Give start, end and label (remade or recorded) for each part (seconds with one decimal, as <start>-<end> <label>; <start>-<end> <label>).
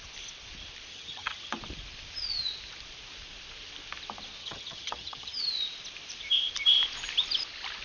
0.0-0.9 recorded; 0.9-1.5 remade; 1.5-4.4 recorded; 4.4-5.4 remade; 5.4-7.8 recorded